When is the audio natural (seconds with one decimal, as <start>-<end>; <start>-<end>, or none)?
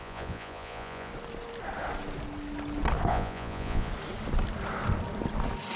1.1-3.1; 3.9-5.8